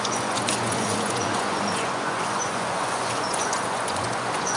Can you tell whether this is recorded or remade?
remade